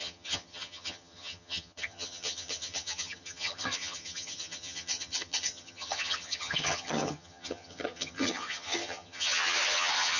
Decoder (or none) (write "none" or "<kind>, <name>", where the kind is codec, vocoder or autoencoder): vocoder, HiFi-GAN